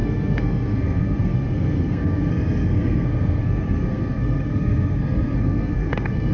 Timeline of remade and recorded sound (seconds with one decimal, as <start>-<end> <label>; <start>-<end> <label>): 0.0-6.3 remade